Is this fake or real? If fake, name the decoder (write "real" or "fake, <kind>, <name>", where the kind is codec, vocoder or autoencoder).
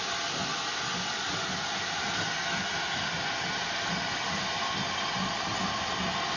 real